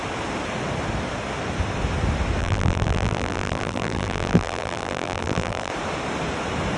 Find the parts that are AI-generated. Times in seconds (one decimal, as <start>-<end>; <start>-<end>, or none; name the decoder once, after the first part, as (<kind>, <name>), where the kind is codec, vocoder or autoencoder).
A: 2.4-5.7 (vocoder, BigVGAN v2)